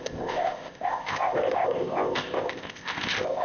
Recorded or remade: remade